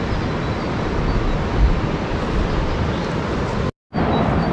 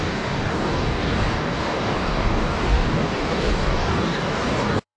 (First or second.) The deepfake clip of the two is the second